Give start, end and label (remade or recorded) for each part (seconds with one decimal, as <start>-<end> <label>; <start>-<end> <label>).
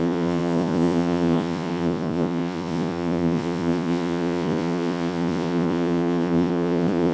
0.0-7.1 remade